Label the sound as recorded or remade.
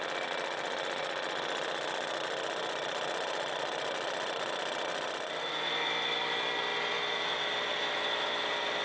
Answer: recorded